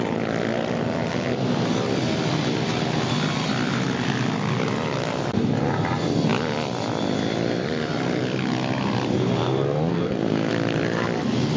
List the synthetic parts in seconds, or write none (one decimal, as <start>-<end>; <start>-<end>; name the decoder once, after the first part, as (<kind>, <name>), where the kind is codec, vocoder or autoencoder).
9.9-10.5 (codec, SNAC)